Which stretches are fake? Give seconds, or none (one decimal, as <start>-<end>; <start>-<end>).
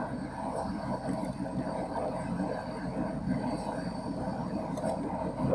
none